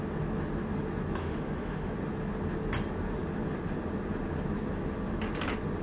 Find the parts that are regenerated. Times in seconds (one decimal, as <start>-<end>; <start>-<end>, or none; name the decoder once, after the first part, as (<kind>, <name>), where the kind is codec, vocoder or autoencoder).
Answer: 1.2-1.9 (autoencoder, DAC-VAE)